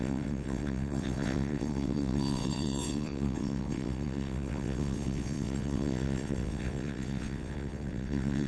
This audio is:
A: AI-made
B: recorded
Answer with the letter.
A